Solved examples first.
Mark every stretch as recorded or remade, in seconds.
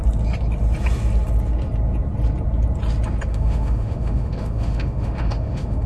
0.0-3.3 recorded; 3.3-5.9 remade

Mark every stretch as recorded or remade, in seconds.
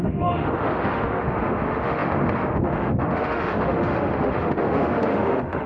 0.0-5.7 remade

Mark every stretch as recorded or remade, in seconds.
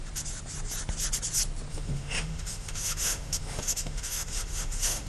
0.0-1.7 recorded; 1.7-5.1 remade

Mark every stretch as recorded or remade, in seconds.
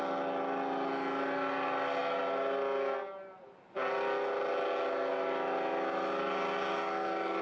0.0-7.4 recorded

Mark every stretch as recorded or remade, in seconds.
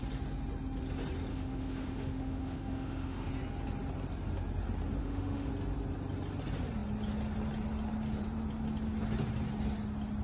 0.0-1.3 recorded; 1.3-3.3 remade; 3.3-5.0 recorded; 5.0-5.5 remade; 5.5-10.2 recorded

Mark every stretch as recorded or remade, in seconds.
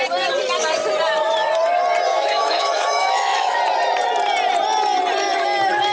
0.0-2.1 recorded; 2.1-3.6 remade; 3.6-5.9 recorded